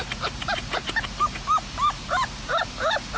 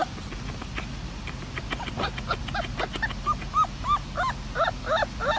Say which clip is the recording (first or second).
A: second